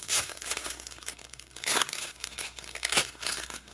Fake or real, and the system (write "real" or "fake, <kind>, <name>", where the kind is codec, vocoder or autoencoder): fake, codec, SNAC